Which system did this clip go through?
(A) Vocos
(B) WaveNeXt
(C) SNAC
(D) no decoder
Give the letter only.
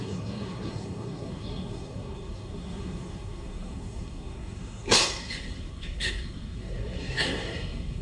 C